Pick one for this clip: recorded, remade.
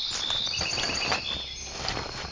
recorded